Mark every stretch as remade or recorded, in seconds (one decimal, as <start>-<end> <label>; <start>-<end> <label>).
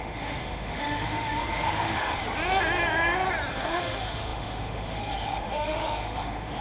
0.0-2.2 remade; 2.2-3.5 recorded; 3.5-6.6 remade